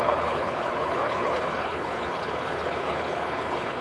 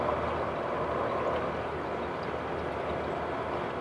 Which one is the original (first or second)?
second